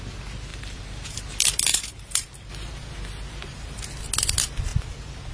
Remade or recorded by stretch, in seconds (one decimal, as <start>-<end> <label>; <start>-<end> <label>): 0.0-0.5 recorded; 0.5-1.2 remade; 1.2-1.7 recorded; 1.7-2.5 remade; 2.5-5.3 recorded